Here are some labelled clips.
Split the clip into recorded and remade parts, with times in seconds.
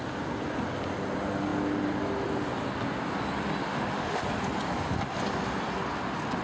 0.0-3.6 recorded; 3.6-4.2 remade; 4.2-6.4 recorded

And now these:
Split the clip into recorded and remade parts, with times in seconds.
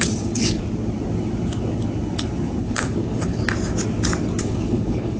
0.0-0.6 remade; 0.6-2.6 recorded; 2.6-3.4 remade; 3.4-4.4 recorded; 4.4-5.2 remade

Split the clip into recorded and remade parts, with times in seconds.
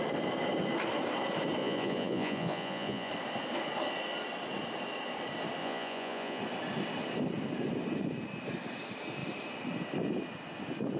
0.0-1.6 recorded; 1.6-3.1 remade; 3.1-5.6 recorded; 5.6-6.4 remade; 6.4-11.0 recorded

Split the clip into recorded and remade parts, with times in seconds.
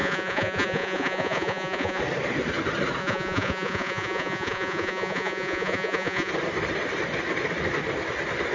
0.0-2.0 remade; 2.0-3.0 recorded; 3.0-6.3 remade; 6.3-8.5 recorded